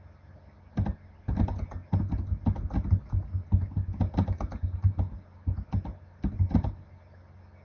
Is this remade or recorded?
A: recorded